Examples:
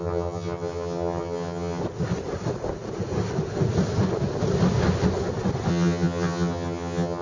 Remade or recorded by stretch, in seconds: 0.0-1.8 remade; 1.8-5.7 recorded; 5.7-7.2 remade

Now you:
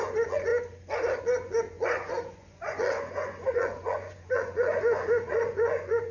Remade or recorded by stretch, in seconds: 0.0-0.5 remade; 0.5-1.2 recorded; 1.2-6.1 remade

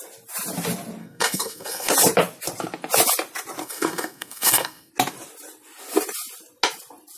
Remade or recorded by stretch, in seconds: 0.0-1.0 recorded; 1.0-1.9 remade; 1.9-3.6 recorded; 3.6-4.9 remade; 4.9-7.2 recorded

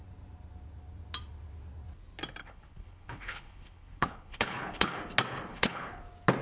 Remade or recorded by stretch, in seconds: 0.0-2.4 recorded; 2.4-5.0 remade; 5.0-5.5 recorded; 5.5-6.0 remade; 6.0-6.4 recorded

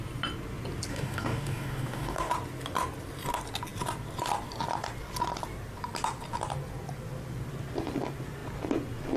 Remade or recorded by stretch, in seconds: 0.0-0.9 recorded; 0.9-2.3 remade; 2.3-9.2 recorded

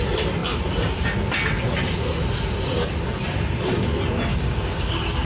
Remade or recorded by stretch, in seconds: 0.0-4.3 recorded; 4.3-5.3 remade

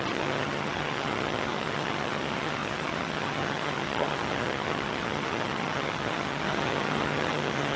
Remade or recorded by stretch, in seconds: 0.0-7.8 remade